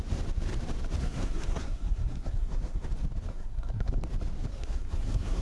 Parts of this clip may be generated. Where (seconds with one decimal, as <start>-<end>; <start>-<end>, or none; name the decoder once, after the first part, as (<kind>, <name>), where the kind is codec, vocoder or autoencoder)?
1.0-2.9 (codec, SNAC); 3.3-3.9; 4.5-5.4